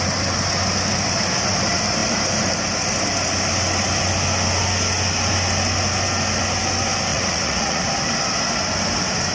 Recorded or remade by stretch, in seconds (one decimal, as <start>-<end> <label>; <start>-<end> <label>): 0.0-7.1 recorded; 7.1-7.8 remade; 7.8-9.3 recorded